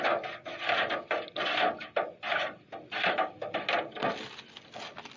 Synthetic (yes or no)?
no